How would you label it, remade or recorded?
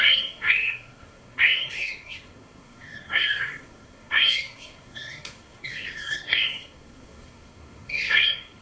remade